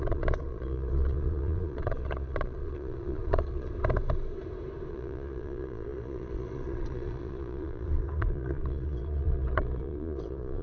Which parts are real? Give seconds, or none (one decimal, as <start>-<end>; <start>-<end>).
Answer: 3.7-4.9